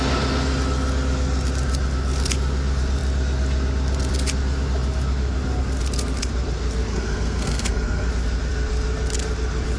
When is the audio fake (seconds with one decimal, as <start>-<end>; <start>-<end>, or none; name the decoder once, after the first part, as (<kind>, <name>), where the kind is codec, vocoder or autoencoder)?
6.9-8.1 (codec, SNAC)